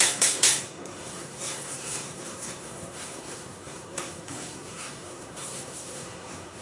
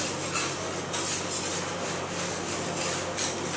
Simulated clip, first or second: first